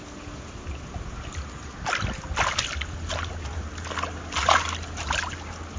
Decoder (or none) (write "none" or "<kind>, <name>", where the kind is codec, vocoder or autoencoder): none